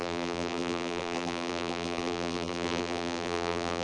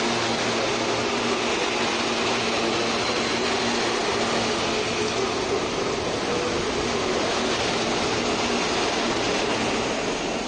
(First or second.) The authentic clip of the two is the second